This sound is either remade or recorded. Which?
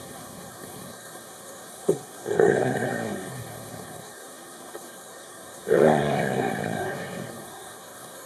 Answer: remade